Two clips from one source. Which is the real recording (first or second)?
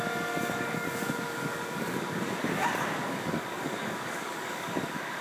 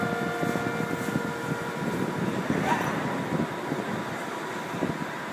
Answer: second